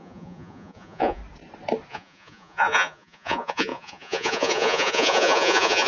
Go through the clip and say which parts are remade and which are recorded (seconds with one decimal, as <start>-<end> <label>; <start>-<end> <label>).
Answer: 0.0-1.2 remade; 1.2-1.9 recorded; 1.9-5.9 remade